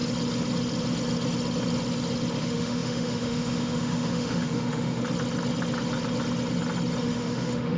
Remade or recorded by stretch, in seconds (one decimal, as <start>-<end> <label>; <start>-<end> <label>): 0.0-2.4 recorded; 2.4-5.0 remade; 5.0-7.0 recorded; 7.0-7.8 remade